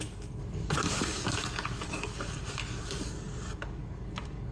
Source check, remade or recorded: remade